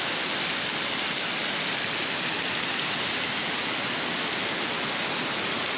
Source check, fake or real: real